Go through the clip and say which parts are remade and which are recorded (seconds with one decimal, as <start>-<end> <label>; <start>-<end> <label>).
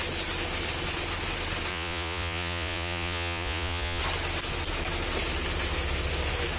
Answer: 0.0-1.7 recorded; 1.7-4.0 remade; 4.0-6.6 recorded